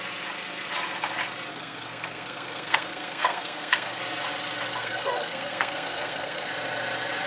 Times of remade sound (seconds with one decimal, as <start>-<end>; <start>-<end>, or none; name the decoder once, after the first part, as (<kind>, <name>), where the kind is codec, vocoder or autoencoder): 1.5-4.0 (codec, SNAC); 4.8-6.5

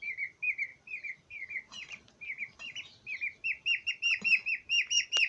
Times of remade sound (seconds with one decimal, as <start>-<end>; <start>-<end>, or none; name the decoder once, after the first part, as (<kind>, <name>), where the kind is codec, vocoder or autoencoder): 0.0-0.7 (vocoder, BigVGAN v2); 3.9-4.3

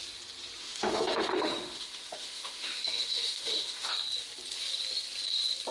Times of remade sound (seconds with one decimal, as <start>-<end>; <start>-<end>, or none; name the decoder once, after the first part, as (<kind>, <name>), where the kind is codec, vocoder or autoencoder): 0.6-3.9 (autoencoder, DAC-VAE)

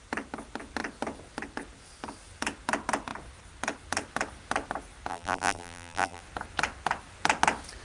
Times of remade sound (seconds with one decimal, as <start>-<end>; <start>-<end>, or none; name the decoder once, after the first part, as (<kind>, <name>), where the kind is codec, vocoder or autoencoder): 5.1-6.2 (vocoder, BigVGAN v2)

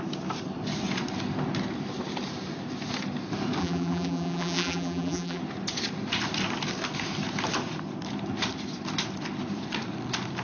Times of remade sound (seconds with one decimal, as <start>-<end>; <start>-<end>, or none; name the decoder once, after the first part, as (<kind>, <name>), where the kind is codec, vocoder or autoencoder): 3.6-5.4 (vocoder, BigVGAN v2)

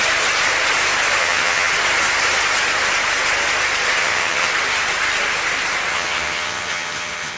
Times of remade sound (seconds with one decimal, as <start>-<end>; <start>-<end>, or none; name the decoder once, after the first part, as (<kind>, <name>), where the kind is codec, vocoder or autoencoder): 1.2-1.7 (vocoder, HiFi-GAN); 4.0-4.5; 5.9-7.4

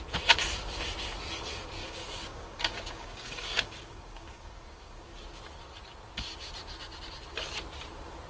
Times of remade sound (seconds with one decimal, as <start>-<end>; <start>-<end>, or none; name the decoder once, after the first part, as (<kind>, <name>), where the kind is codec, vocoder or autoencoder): 1.8-5.2 (codec, DAC)

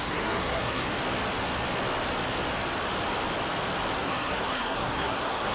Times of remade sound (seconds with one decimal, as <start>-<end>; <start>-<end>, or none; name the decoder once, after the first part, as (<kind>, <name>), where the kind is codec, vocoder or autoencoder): 0.0-0.8 (codec, SNAC); 4.0-5.5